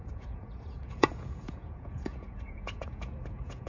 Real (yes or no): no